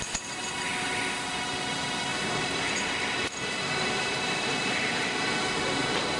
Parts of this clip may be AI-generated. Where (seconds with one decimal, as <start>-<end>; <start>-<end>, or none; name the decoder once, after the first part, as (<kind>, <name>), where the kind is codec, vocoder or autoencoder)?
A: 2.1-5.2 (vocoder, BigVGAN v2)

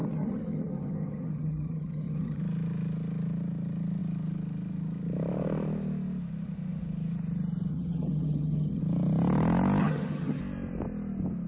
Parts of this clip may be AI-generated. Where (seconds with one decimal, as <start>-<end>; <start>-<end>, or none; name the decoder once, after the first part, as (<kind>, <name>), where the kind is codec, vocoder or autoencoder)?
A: 0.0-2.4 (vocoder, HiFi-GAN); 7.7-8.8; 9.8-10.4